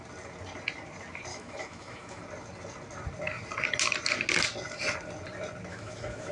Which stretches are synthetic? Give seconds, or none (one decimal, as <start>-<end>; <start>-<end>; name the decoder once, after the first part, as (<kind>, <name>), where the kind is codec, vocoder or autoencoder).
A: 1.3-2.2 (autoencoder, DAC-VAE); 5.7-6.3